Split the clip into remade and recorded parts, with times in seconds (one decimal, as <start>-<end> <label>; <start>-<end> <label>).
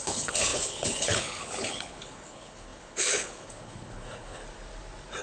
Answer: 0.0-4.4 remade; 4.4-5.2 recorded